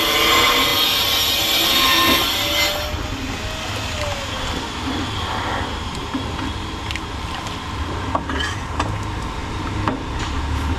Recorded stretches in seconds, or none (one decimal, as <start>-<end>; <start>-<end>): 0.0-10.8